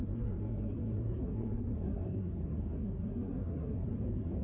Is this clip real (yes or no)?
no